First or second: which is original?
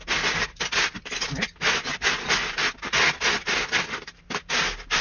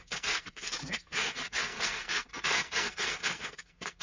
first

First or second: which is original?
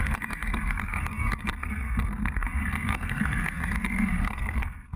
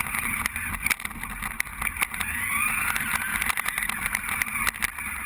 second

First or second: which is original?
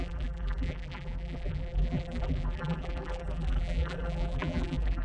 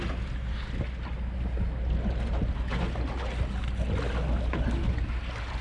second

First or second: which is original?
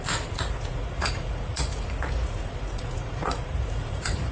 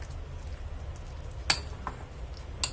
second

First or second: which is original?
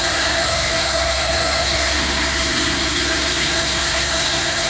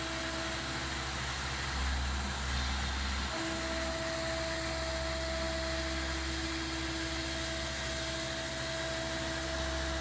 second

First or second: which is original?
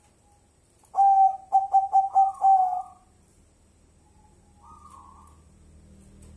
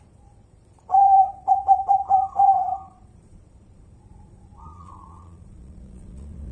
first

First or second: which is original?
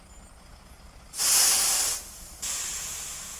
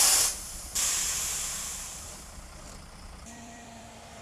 first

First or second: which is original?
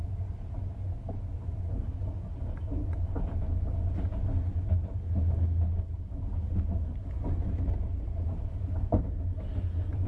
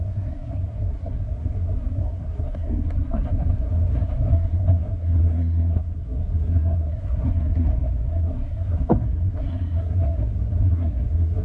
first